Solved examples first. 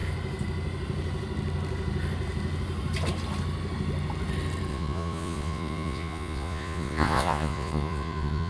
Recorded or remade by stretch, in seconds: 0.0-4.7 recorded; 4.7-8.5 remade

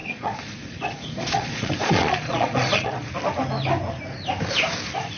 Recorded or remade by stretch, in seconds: 0.0-3.1 remade; 3.1-5.2 recorded

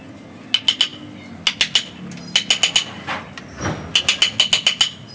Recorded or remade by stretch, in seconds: 0.0-5.1 recorded

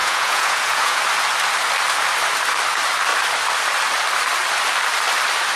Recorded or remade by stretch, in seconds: 0.0-1.0 remade; 1.0-5.6 recorded

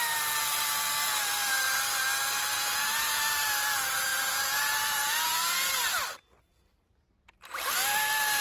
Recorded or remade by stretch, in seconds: 0.0-2.5 recorded; 2.5-3.2 remade; 3.2-4.1 recorded; 4.1-5.7 remade; 5.7-8.4 recorded

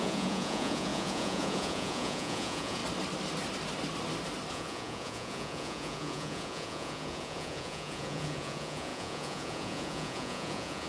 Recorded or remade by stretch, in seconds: 0.0-2.8 remade; 2.8-4.5 recorded; 4.5-10.9 remade

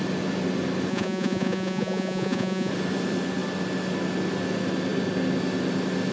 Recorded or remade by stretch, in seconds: 0.0-0.9 recorded; 0.9-2.7 remade; 2.7-6.1 recorded

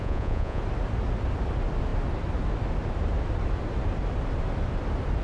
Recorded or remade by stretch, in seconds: 0.0-0.6 remade; 0.6-5.2 recorded